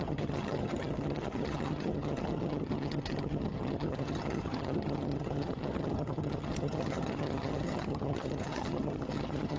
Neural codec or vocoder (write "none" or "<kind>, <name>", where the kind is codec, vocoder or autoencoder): vocoder, HiFi-GAN